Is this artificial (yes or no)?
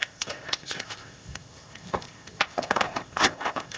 yes